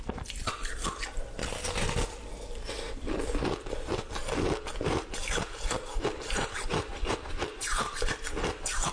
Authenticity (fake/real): real